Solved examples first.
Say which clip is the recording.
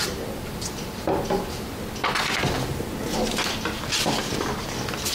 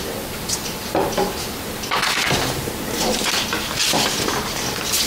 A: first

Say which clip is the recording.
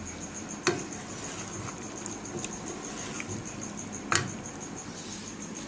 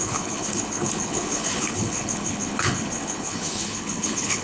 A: first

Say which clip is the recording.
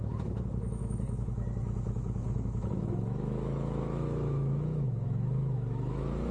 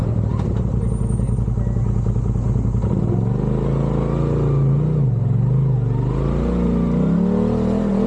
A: second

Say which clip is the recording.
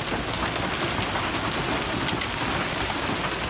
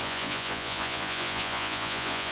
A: first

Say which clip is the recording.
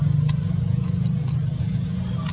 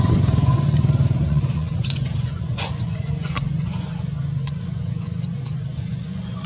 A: first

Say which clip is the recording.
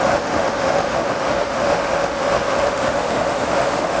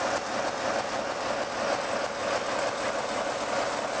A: second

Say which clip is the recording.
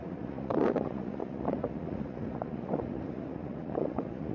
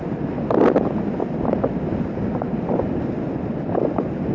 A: second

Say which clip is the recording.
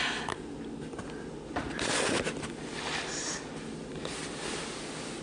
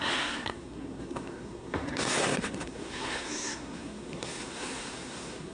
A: first